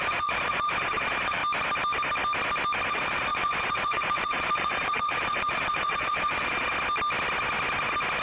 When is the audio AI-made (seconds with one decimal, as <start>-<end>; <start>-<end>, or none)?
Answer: 0.0-1.4; 2.9-6.7